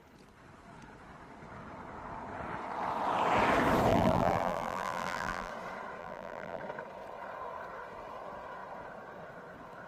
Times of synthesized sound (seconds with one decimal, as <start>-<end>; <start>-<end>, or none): 3.9-5.5; 6.0-6.6